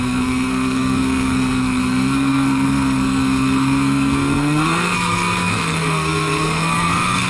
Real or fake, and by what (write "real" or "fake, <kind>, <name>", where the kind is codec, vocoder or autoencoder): fake, codec, SNAC